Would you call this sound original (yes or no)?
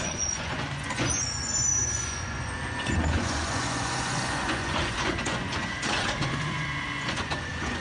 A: no